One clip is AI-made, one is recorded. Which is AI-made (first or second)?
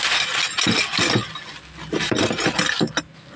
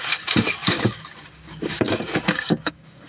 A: second